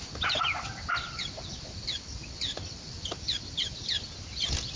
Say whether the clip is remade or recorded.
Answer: recorded